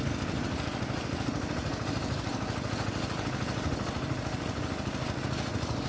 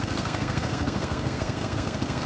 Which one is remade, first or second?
second